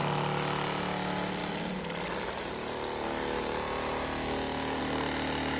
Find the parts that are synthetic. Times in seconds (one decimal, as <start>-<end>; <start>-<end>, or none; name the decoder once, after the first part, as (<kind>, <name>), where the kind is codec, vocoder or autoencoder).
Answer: none